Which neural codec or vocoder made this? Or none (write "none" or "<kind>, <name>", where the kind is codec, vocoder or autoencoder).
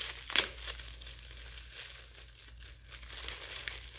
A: none